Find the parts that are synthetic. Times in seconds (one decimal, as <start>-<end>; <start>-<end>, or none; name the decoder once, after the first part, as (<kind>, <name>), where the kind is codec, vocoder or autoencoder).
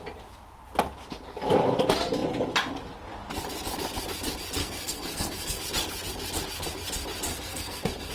4.6-5.6 (codec, SNAC); 7.3-8.1